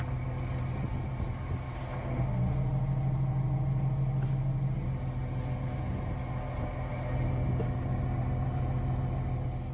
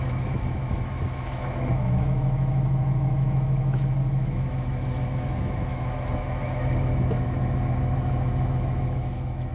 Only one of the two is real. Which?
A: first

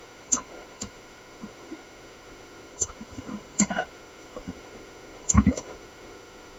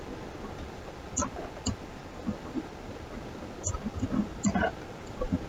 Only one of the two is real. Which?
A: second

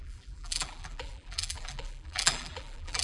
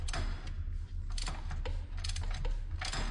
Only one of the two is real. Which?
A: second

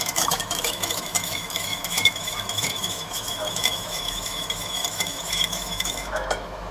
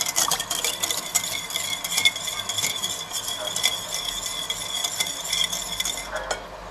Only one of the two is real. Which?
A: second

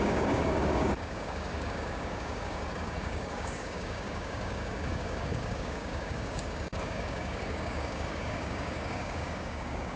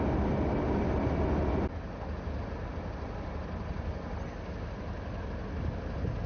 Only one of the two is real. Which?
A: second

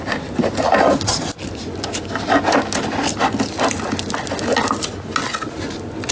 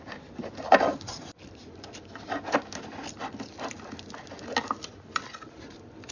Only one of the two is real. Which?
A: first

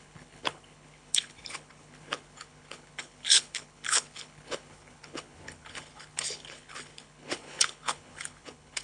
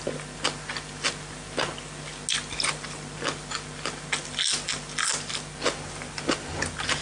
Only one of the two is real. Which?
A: second